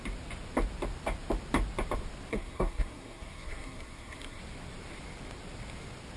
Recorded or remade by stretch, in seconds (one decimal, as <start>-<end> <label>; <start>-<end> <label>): 0.0-2.3 recorded; 2.3-4.4 remade; 4.4-6.2 recorded